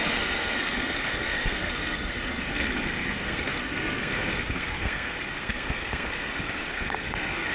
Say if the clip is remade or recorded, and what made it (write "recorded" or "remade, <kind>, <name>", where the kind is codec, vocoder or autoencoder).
remade, codec, SNAC